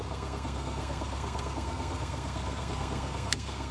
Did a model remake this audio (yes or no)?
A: yes